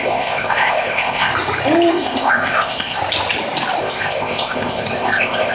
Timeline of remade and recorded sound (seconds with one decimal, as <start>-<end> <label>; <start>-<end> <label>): 0.0-1.3 remade; 1.3-1.9 recorded; 1.9-3.0 remade; 3.0-3.8 recorded; 3.8-5.5 remade

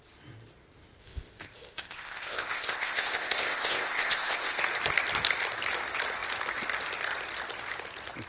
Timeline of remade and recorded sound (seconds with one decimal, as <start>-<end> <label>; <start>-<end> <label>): 0.0-1.0 recorded; 1.0-4.6 remade; 4.6-8.3 recorded